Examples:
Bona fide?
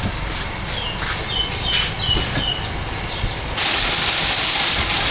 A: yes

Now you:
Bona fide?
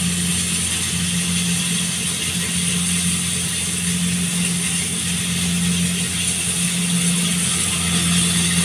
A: yes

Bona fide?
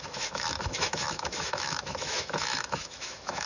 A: no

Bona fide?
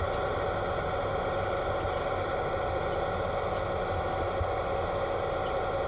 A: yes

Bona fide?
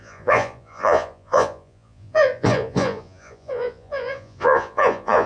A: no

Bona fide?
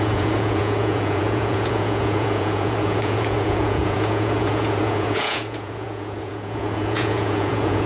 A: no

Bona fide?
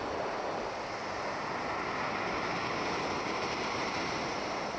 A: yes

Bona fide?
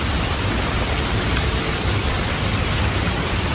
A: no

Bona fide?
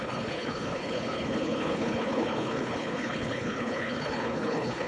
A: no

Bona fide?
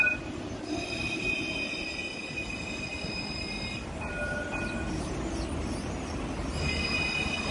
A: yes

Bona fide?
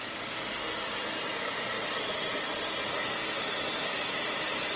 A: yes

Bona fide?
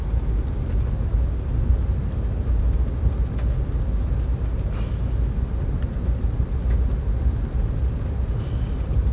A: yes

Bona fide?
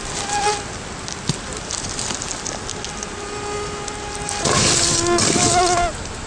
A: yes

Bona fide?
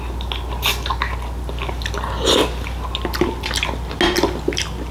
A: yes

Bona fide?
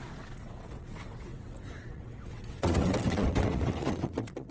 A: no